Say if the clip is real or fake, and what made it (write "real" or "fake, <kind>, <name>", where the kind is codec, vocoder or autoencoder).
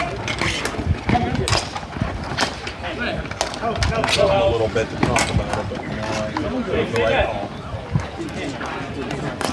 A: real